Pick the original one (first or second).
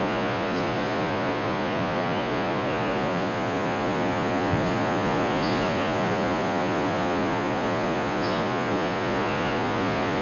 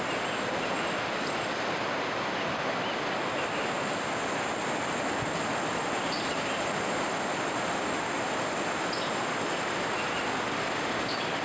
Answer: second